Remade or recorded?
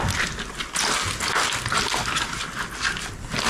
recorded